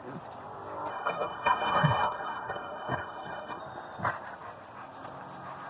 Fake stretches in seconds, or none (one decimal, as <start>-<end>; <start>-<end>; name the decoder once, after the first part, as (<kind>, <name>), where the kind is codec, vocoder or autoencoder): 0.9-3.6 (codec, SNAC)